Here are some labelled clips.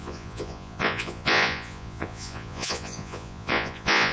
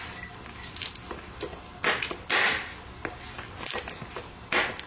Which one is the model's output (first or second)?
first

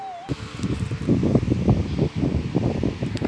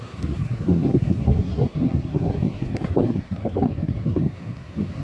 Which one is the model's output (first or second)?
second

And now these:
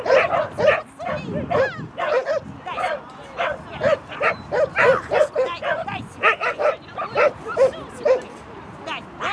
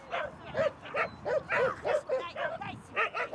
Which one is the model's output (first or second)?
first